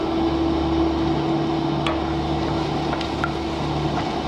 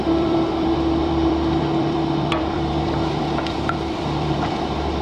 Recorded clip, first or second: first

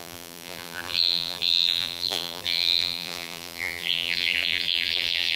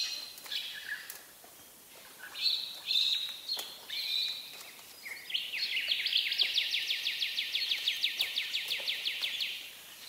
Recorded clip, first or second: second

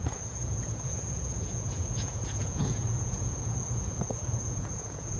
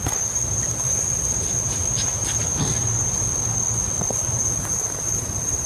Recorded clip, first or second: second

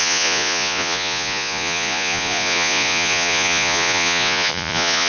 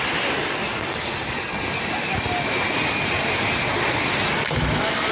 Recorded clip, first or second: second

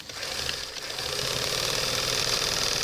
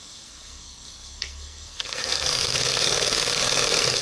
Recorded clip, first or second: first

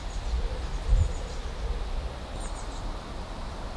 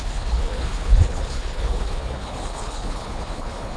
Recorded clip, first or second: first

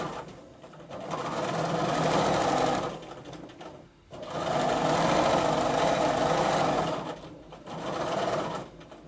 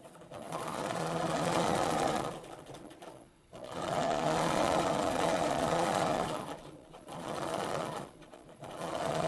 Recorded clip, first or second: first